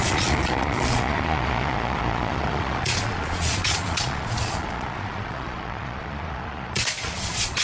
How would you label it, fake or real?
fake